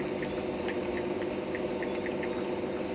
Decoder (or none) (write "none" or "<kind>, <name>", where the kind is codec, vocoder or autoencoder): none